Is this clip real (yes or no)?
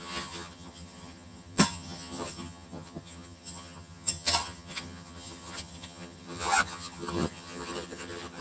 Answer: no